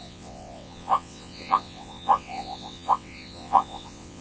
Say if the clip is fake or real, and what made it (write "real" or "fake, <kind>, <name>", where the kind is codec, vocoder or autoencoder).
fake, vocoder, WaveNeXt